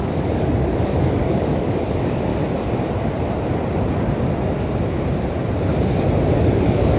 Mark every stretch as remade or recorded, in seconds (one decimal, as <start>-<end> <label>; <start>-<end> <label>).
0.0-2.3 remade; 2.3-6.3 recorded; 6.3-7.0 remade